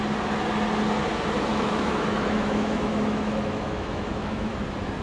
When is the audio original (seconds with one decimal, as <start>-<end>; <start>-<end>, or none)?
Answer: 0.0-1.5; 4.5-5.0